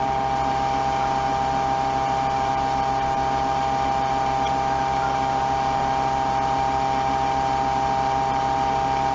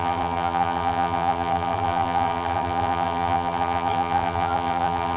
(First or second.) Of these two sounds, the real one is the first